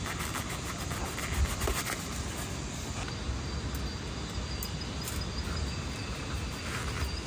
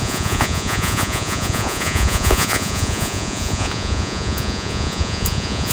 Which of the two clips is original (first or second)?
first